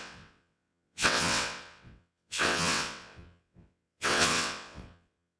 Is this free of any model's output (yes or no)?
no